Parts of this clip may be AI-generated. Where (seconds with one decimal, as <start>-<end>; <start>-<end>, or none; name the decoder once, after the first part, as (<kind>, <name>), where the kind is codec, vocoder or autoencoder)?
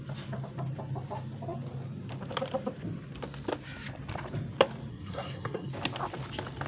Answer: 4.9-5.7 (codec, SNAC)